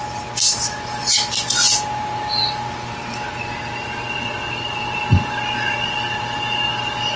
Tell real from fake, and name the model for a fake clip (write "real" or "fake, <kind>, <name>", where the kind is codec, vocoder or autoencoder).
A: real